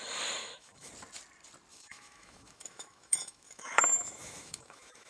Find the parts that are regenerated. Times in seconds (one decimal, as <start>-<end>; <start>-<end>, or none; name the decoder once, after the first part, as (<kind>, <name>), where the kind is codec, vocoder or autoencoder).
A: 0.4-0.9 (autoencoder, DAC-VAE); 1.7-5.1